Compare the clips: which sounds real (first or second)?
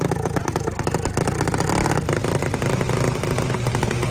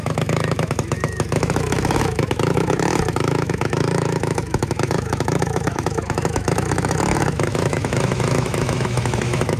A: first